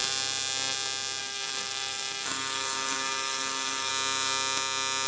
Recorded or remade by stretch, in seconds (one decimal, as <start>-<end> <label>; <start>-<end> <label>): 0.0-1.2 recorded; 1.2-3.9 remade; 3.9-5.1 recorded